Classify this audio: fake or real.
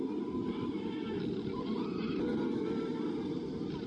real